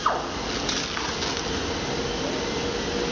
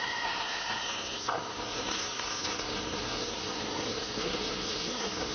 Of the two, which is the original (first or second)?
first